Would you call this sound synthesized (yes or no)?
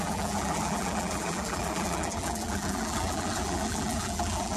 yes